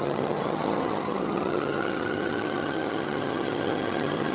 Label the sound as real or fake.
fake